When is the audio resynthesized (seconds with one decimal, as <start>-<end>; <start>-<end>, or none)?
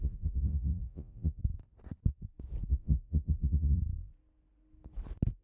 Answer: 0.0-1.4; 2.7-3.8